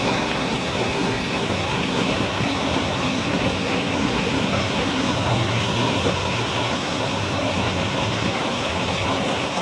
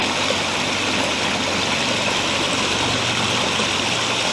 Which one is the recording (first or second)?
second